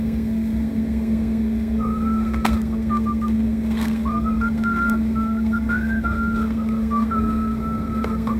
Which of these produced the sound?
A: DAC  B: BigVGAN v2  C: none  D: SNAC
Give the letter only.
D